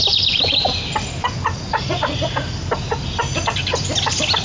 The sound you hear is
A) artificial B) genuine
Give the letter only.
B